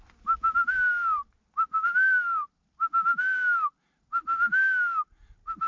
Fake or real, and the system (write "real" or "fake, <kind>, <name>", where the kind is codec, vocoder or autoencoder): real